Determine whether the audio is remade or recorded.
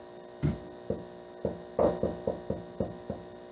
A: recorded